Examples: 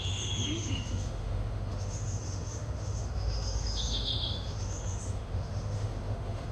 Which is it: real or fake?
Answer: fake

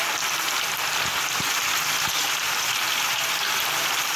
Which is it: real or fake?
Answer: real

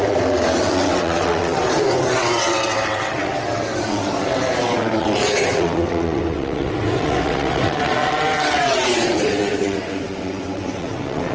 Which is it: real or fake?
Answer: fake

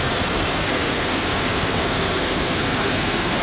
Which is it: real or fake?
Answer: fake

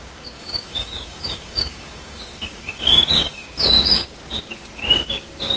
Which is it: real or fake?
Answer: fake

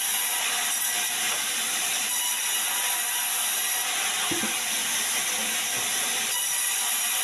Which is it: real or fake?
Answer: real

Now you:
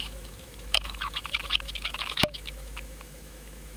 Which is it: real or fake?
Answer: fake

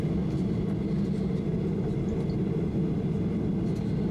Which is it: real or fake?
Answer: real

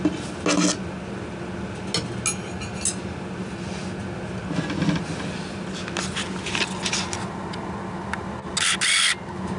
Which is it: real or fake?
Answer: real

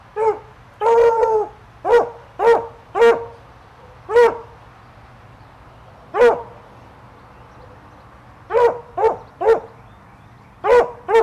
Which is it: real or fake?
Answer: real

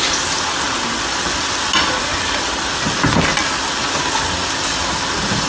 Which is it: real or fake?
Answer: real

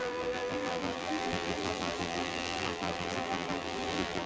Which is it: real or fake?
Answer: fake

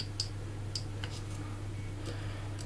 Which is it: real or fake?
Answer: real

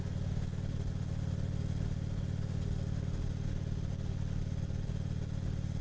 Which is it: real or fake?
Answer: real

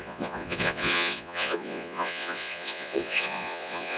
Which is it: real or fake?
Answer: fake